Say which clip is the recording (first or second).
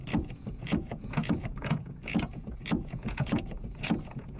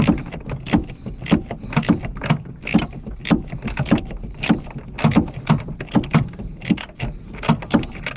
second